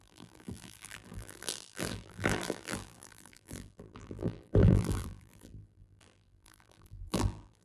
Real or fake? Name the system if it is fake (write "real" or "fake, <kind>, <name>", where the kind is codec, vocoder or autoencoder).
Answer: fake, vocoder, BigVGAN v2